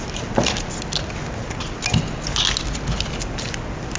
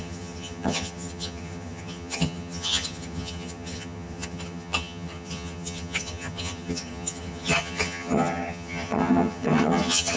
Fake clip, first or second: second